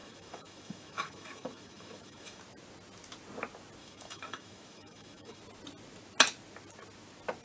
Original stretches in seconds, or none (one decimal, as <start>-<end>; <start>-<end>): 2.4-3.8; 5.4-7.4